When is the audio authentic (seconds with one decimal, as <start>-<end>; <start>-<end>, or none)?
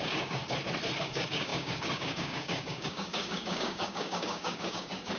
0.4-1.0